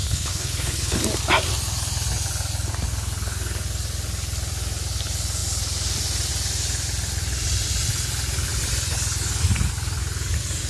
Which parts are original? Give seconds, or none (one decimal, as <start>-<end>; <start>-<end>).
1.0-10.7